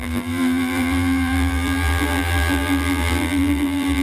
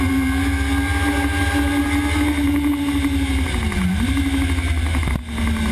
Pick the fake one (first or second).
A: first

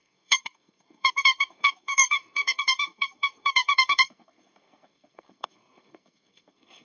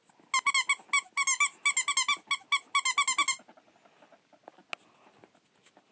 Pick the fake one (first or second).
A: first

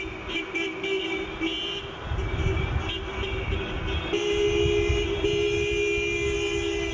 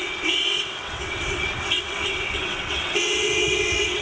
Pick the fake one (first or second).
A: second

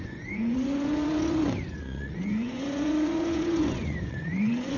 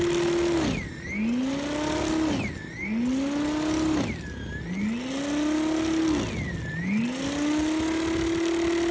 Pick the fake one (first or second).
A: first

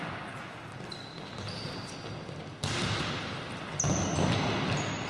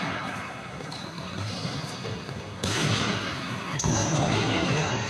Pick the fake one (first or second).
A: second